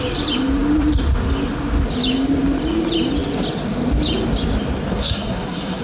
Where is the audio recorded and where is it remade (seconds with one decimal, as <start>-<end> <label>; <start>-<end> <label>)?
0.0-4.9 recorded; 4.9-5.8 remade